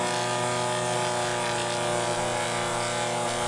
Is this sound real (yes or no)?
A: yes